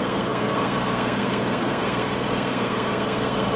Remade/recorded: remade